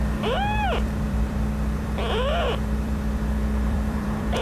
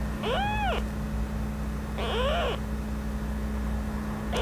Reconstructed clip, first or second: first